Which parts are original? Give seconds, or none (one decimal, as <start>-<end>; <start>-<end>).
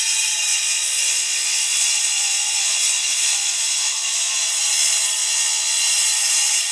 0.0-0.5; 4.5-5.2; 5.8-6.7